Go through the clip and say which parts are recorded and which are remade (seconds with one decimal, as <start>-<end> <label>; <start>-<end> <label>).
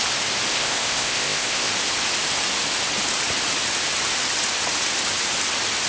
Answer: 0.0-0.5 recorded; 0.5-1.7 remade; 1.7-5.9 recorded